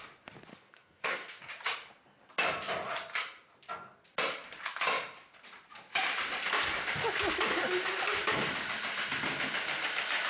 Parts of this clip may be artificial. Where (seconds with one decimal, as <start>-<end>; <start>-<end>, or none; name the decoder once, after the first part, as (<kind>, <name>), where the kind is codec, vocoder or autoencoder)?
0.5-1.5 (codec, SNAC)